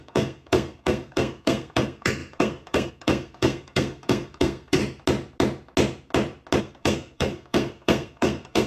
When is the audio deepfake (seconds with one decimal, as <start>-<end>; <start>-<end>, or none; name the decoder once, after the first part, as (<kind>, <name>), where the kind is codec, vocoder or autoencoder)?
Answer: 0.0-4.8 (codec, SNAC); 6.6-8.7